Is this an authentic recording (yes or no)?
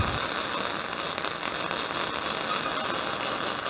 yes